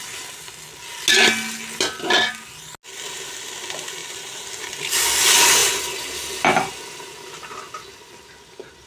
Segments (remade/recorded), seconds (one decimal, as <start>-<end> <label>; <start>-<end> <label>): 0.0-4.0 recorded; 4.0-4.6 remade; 4.6-8.9 recorded